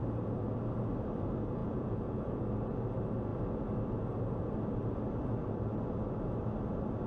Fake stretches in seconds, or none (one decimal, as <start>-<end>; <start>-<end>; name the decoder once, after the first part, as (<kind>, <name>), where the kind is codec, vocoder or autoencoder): 1.6-2.4 (vocoder, Vocos)